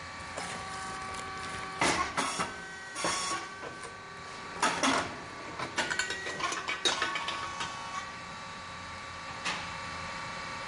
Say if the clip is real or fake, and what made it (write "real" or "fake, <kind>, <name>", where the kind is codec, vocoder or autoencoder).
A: real